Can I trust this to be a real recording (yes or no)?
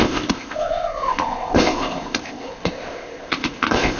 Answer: no